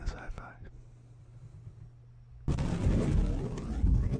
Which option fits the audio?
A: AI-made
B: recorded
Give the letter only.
B